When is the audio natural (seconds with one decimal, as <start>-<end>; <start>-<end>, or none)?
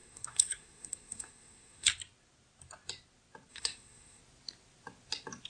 1.9-3.5; 4.2-5.5